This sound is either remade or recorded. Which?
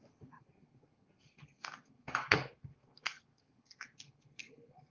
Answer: remade